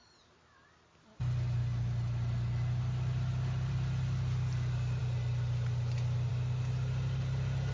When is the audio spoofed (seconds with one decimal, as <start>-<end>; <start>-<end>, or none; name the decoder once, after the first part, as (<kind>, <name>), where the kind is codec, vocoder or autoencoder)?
none